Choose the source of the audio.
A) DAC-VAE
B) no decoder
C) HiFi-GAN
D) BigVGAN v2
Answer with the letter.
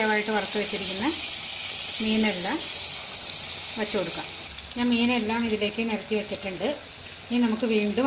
B